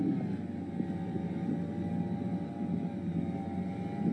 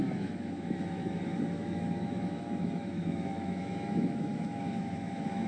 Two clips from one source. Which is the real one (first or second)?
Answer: first